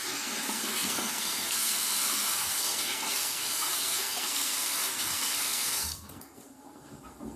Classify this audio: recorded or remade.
remade